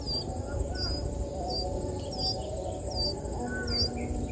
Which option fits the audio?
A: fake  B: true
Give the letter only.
B